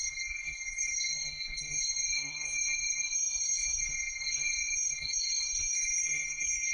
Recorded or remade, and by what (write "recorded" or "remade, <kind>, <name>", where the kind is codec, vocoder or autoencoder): remade, codec, SNAC